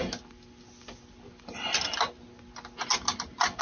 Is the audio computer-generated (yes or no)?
no